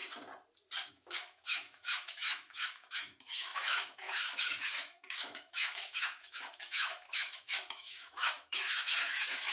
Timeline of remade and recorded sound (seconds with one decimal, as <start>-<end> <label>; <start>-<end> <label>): 0.0-0.9 recorded; 0.9-9.5 remade